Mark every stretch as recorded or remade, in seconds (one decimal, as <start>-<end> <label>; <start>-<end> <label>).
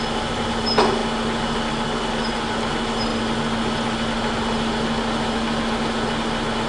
0.0-6.7 recorded